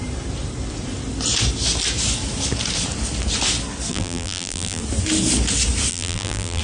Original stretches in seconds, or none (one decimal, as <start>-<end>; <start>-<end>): 0.0-3.9; 4.8-5.9